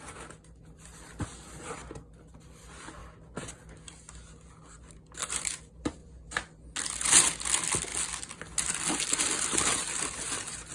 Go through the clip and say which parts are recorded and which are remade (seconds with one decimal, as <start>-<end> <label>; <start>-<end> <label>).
0.0-10.7 recorded